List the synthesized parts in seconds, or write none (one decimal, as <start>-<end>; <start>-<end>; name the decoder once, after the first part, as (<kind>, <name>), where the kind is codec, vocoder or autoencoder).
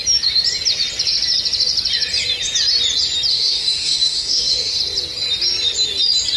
3.3-4.8 (autoencoder, DAC-VAE)